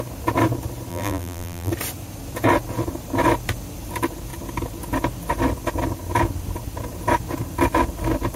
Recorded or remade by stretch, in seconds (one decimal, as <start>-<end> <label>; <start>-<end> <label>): 0.0-0.9 recorded; 0.9-1.7 remade; 1.7-8.4 recorded